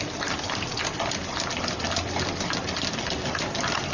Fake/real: real